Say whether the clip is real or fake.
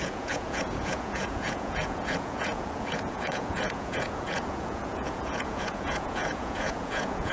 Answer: fake